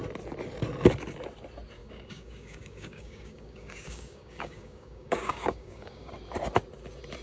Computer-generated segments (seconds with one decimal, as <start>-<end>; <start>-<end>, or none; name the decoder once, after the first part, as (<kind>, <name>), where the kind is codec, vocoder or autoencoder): 1.8-6.1 (codec, DAC)